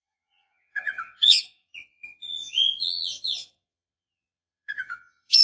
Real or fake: fake